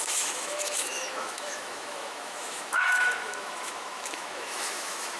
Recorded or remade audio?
remade